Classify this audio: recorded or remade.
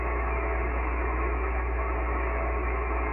remade